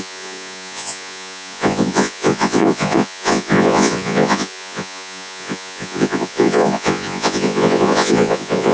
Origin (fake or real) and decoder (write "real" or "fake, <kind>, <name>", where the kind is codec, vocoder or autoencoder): fake, vocoder, Vocos